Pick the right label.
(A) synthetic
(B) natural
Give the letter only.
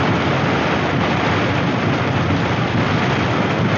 B